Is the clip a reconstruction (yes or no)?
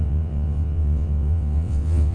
yes